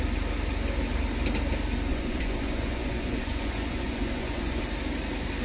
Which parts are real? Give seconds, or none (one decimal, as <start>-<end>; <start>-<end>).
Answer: 0.0-1.9; 4.6-5.4